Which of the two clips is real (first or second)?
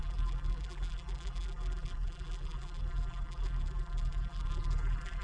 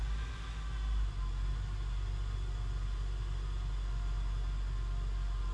second